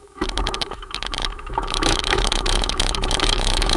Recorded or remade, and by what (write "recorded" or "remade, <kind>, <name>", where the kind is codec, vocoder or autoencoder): remade, autoencoder, DAC-VAE